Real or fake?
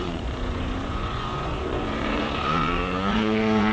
fake